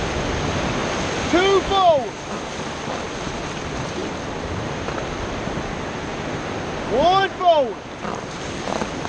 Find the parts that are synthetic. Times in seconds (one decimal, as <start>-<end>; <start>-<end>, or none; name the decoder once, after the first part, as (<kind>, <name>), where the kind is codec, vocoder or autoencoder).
none